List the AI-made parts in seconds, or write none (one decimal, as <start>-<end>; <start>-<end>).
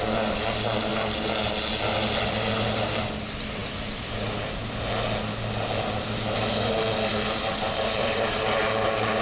7.1-8.6